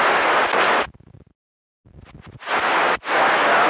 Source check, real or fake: real